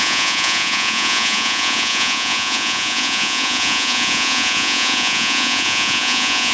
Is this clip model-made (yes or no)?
yes